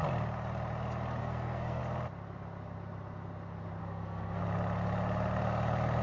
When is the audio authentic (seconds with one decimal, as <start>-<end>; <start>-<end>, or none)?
0.0-1.2; 1.8-3.8; 4.4-6.0